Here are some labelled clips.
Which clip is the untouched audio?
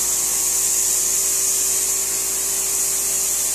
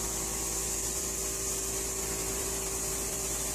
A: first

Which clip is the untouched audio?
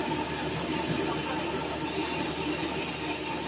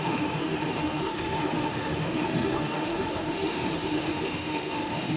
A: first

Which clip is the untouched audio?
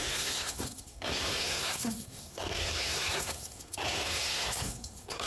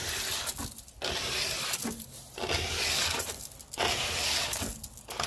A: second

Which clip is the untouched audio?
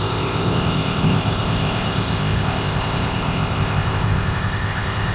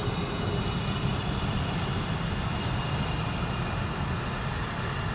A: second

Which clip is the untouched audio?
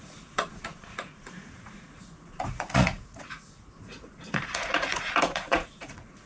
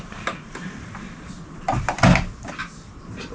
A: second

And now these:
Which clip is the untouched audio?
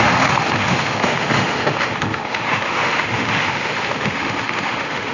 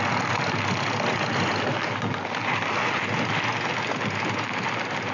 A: second